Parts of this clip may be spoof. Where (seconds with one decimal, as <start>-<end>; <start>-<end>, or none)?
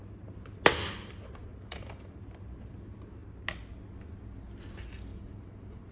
1.5-2.2; 5.1-5.9